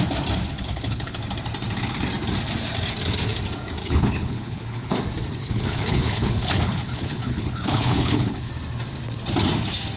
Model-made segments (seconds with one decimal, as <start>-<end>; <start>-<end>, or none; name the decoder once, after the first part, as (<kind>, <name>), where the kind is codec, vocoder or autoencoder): 0.5-1.2 (codec, HILCodec); 3.8-4.9; 5.4-8.5